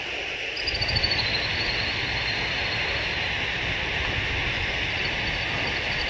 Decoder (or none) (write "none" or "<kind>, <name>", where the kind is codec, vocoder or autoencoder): none